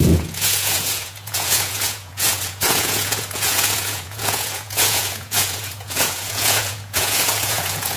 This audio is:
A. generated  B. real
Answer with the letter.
A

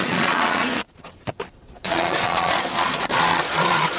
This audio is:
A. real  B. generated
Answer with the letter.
B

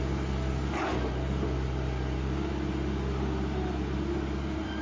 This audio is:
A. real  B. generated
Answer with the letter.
A